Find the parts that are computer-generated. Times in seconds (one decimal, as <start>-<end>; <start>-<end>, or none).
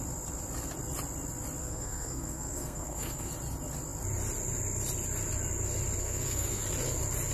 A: 1.6-3.3; 6.0-6.6